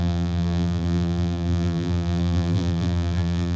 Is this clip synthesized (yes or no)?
yes